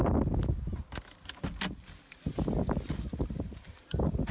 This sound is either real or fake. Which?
real